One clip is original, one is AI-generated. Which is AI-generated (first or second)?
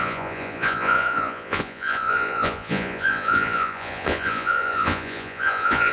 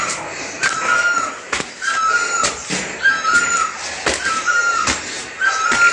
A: first